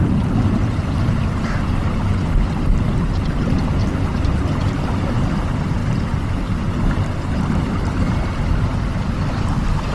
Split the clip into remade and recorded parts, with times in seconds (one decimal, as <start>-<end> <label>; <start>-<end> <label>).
0.0-9.9 recorded